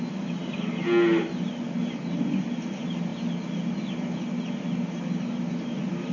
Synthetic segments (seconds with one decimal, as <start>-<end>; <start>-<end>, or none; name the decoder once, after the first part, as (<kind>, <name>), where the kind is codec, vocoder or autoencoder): none